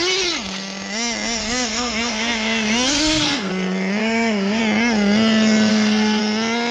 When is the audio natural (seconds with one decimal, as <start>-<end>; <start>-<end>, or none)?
0.0-1.4; 3.5-4.0; 4.6-5.7; 6.2-6.7